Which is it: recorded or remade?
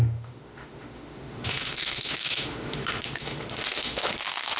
remade